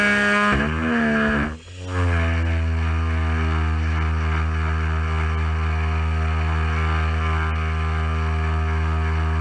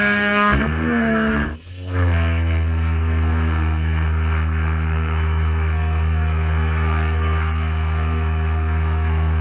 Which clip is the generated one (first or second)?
second